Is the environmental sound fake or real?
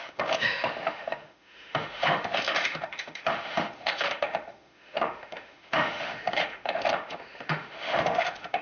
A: fake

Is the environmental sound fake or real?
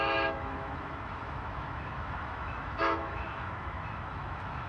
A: fake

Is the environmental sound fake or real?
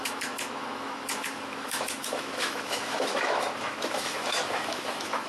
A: fake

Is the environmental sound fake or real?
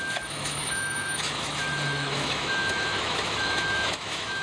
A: fake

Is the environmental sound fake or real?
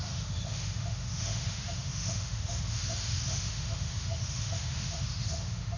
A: fake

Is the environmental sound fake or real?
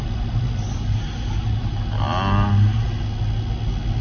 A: real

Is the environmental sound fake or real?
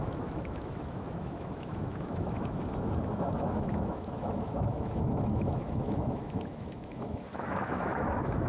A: fake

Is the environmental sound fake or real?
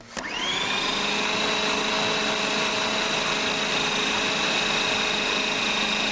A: real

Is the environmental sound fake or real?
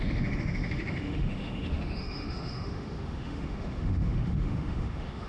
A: fake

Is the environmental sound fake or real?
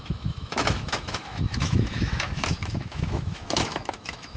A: fake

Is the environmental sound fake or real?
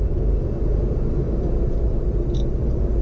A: real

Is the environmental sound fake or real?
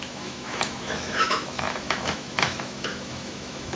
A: fake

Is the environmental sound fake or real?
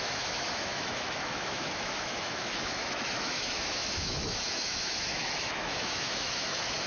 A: fake